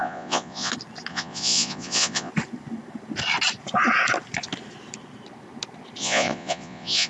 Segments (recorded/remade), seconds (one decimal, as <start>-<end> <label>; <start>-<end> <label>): 0.0-0.7 remade; 0.7-1.1 recorded; 1.1-2.3 remade; 2.3-6.0 recorded; 6.0-7.1 remade